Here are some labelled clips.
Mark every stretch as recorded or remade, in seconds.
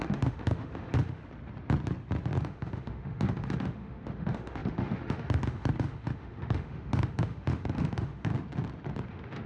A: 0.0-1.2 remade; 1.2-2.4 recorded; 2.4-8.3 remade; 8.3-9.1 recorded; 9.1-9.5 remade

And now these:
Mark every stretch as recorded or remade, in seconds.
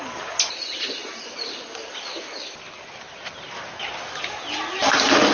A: 0.0-5.3 recorded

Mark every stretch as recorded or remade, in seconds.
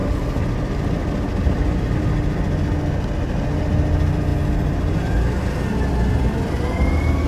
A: 0.0-7.3 recorded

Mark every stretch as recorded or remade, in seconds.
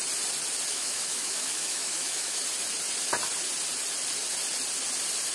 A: 0.0-0.7 recorded; 0.7-2.4 remade; 2.4-5.3 recorded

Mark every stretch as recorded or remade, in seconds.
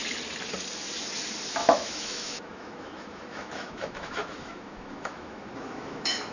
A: 0.0-1.5 recorded; 1.5-6.3 remade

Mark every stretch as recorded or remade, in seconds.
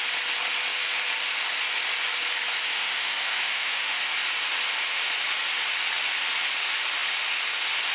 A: 0.0-2.7 recorded; 2.7-4.0 remade; 4.0-7.9 recorded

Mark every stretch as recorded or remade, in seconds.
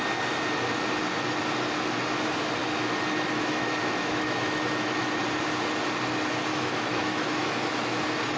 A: 0.0-2.6 recorded; 2.6-5.2 remade; 5.2-6.5 recorded; 6.5-8.0 remade; 8.0-8.4 recorded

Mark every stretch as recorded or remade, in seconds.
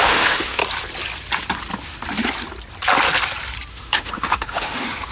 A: 0.0-0.6 remade; 0.6-3.7 recorded; 3.7-5.1 remade